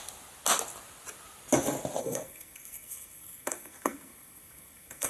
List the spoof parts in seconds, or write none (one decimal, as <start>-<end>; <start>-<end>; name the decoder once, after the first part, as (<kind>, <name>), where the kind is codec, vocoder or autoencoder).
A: 2.0-5.1 (codec, SNAC)